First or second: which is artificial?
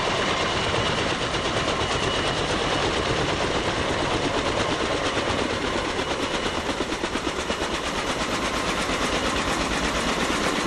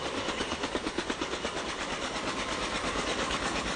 second